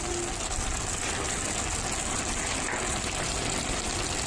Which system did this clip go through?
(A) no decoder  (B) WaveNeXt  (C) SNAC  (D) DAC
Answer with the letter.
A